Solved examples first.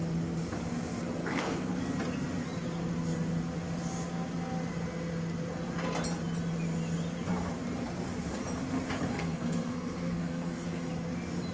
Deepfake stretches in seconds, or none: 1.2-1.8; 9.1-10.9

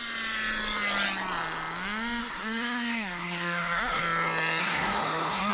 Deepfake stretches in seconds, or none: 2.2-4.0; 4.6-5.5

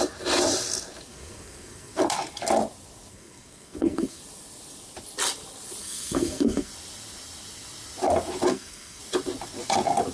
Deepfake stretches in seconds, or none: 1.1-2.0; 3.1-4.2; 5.8-6.7; 8.5-9.0

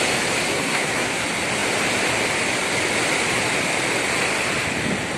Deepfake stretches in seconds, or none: 0.5-1.2

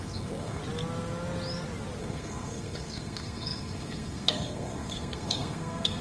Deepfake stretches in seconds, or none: 0.0-0.6; 2.0-6.0

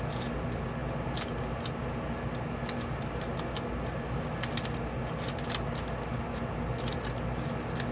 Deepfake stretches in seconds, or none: none

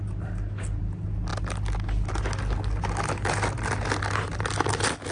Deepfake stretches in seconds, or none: none